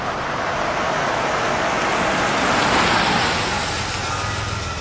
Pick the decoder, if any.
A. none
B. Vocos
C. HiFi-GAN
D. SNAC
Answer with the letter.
A